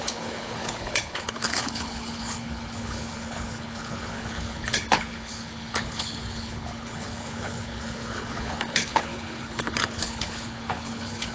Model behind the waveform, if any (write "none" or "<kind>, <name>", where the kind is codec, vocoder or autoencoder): codec, HILCodec